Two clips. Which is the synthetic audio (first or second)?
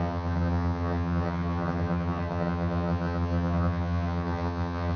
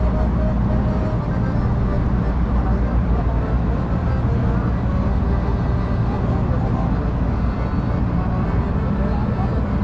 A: first